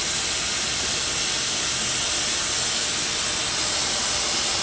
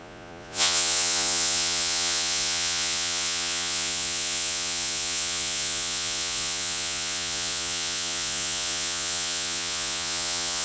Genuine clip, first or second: first